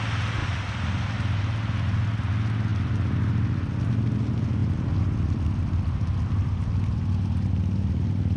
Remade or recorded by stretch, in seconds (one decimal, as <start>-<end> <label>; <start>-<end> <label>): 0.0-0.4 recorded; 0.4-2.3 remade; 2.3-2.7 recorded; 2.7-3.8 remade; 3.8-4.6 recorded; 4.6-7.5 remade; 7.5-8.4 recorded